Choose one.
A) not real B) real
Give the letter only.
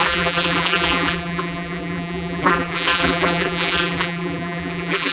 A